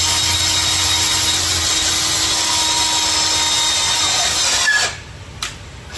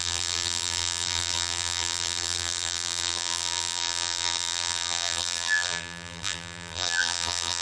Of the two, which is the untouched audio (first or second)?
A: first